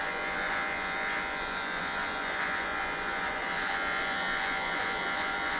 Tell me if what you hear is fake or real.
fake